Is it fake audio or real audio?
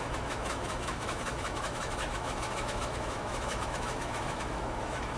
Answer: fake